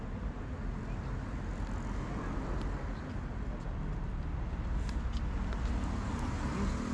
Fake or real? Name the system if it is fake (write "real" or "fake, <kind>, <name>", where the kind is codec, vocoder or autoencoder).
real